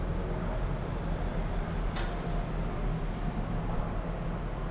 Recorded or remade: recorded